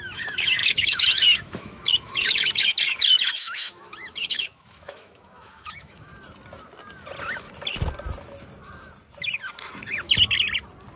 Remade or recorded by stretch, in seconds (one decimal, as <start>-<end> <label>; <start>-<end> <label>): 0.0-6.1 remade; 6.1-11.0 recorded